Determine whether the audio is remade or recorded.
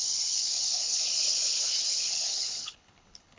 remade